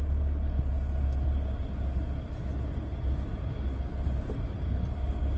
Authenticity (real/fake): real